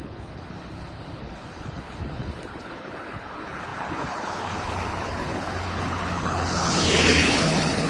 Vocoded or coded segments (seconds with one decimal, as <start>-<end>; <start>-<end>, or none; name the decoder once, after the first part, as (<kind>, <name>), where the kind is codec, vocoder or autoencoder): 0.0-7.9 (codec, HILCodec)